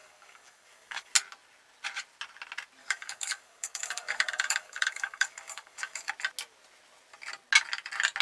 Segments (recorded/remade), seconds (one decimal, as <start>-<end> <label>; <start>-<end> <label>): 0.0-1.1 remade; 1.1-2.8 recorded; 2.8-6.1 remade; 6.1-8.2 recorded